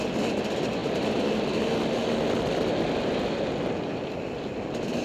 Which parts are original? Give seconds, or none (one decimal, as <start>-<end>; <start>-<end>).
0.0-5.0

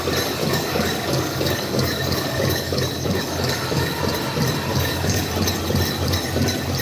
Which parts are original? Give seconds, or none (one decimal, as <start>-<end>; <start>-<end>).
0.0-0.4; 4.0-4.7; 5.3-6.8

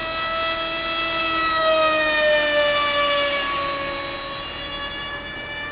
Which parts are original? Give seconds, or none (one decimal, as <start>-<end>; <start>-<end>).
0.0-5.7

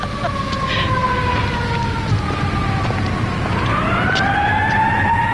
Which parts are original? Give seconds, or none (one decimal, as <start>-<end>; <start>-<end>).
0.0-5.3

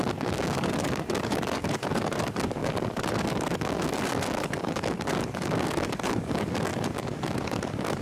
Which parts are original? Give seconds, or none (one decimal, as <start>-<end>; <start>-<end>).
none

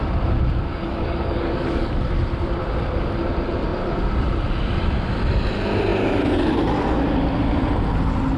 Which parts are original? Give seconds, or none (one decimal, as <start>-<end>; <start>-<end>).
0.0-0.7; 1.9-8.4

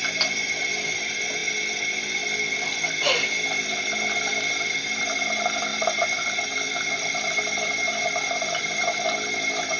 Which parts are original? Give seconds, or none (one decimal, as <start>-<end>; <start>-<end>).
0.0-9.8